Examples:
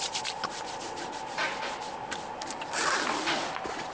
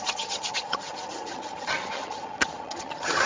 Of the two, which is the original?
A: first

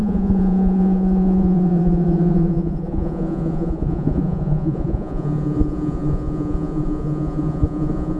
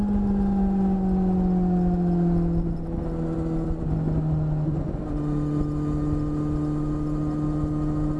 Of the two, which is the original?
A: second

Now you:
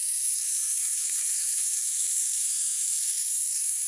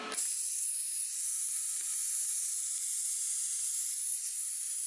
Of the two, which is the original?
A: second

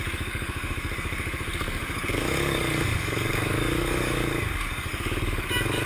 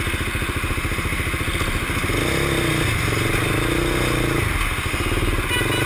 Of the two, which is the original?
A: second